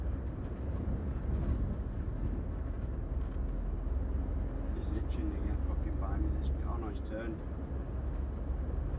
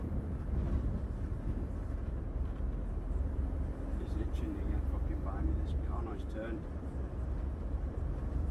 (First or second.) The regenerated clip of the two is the second